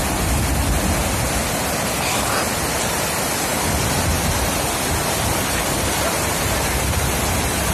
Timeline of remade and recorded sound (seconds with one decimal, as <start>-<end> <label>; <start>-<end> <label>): 0.0-7.7 recorded